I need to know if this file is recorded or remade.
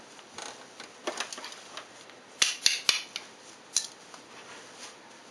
recorded